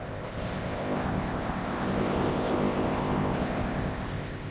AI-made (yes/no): yes